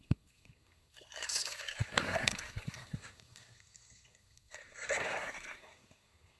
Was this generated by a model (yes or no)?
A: yes